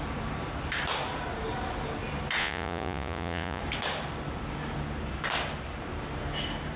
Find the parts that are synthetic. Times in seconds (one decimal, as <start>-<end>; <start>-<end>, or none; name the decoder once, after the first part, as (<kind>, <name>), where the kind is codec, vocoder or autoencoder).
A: 2.4-3.6 (vocoder, Vocos)